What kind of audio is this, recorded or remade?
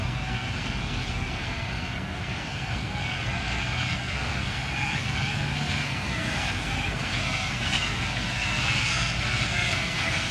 remade